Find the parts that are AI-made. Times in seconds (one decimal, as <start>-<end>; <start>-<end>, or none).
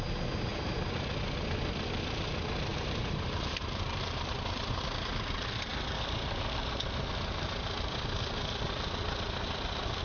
2.7-4.8